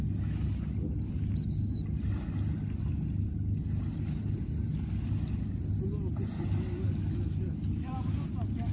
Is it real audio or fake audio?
real